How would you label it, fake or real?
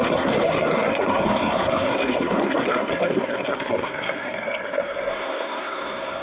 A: fake